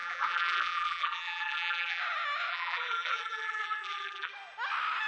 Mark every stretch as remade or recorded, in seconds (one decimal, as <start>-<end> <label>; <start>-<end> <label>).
0.0-2.0 remade; 2.0-2.5 recorded; 2.5-4.3 remade; 4.3-5.1 recorded